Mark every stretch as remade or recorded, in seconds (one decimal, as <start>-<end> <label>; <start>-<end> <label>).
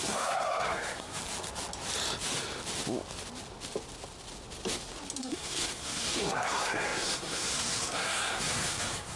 0.0-1.2 remade; 1.2-5.2 recorded; 5.2-9.2 remade